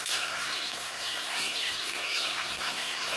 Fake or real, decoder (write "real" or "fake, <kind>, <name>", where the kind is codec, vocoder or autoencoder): fake, codec, SNAC